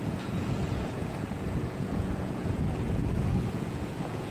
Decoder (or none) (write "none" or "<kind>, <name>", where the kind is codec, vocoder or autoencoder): vocoder, Vocos